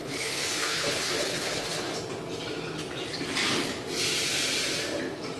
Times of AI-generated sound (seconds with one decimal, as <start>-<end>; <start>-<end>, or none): 0.0-1.9